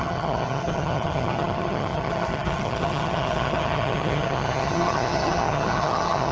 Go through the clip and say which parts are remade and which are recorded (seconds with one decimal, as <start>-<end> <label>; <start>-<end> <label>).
0.0-6.3 remade